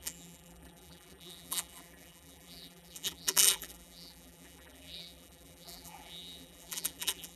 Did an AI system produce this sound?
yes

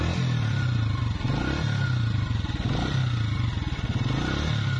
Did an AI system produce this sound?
no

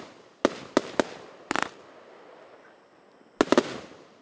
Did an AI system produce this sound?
no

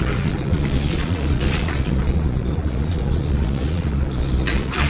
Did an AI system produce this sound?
yes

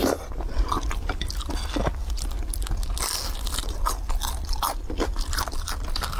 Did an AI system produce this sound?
no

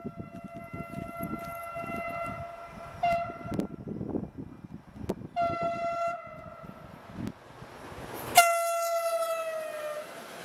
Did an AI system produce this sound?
no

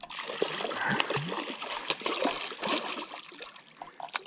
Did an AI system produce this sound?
no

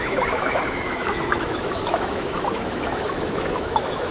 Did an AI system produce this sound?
yes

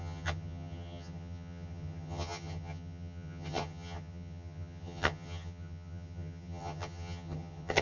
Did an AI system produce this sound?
yes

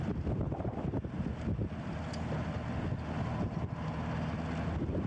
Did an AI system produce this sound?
no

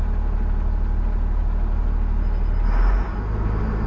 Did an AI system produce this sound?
no